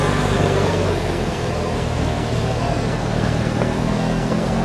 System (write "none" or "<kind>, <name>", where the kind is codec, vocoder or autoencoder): codec, SNAC